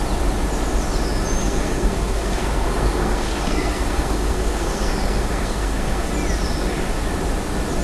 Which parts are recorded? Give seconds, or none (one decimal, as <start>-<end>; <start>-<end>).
0.0-1.4; 6.1-7.8